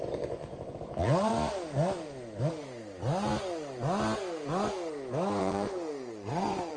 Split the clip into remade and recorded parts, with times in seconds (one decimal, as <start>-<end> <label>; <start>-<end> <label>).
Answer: 0.0-1.3 remade; 1.3-5.4 recorded; 5.4-6.8 remade

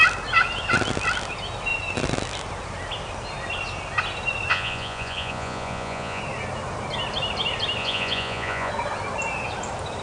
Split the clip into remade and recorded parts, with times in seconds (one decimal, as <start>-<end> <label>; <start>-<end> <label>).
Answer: 0.0-4.5 recorded; 4.5-6.2 remade; 6.2-7.8 recorded; 7.8-8.7 remade; 8.7-10.0 recorded

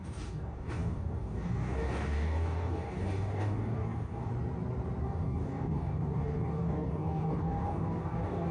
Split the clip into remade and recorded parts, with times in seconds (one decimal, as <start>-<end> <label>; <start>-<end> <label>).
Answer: 0.0-4.3 remade; 4.3-5.0 recorded; 5.0-8.5 remade

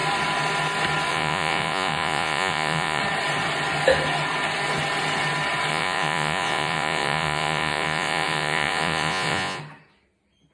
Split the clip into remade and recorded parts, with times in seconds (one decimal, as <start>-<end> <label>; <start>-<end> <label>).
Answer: 0.0-1.1 recorded; 1.1-3.0 remade; 3.0-5.7 recorded; 5.7-9.6 remade; 9.6-10.5 recorded